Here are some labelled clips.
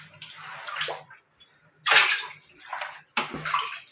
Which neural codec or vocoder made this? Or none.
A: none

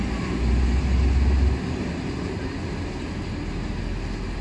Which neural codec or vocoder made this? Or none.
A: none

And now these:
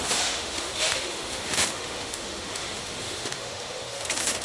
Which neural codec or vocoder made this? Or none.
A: autoencoder, DAC-VAE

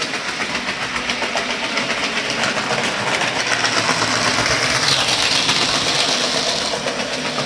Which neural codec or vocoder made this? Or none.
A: none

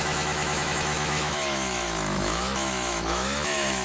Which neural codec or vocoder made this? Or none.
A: autoencoder, DAC-VAE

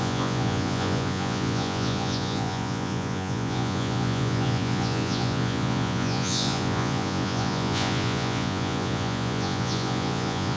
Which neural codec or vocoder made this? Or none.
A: vocoder, Vocos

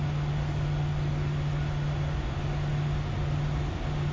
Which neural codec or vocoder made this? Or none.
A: none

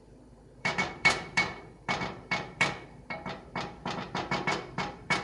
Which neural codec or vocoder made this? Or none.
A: vocoder, BigVGAN v2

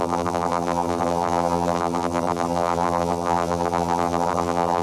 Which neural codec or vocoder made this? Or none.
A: vocoder, BigVGAN v2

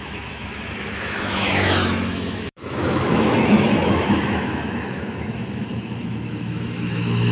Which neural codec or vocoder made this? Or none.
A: autoencoder, DAC-VAE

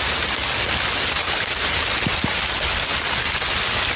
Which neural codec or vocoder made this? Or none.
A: none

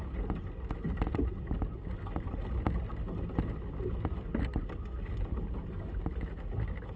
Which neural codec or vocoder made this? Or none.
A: none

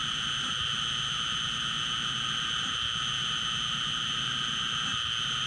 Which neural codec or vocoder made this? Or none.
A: none